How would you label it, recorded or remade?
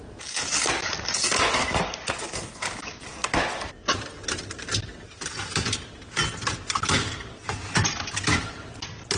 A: recorded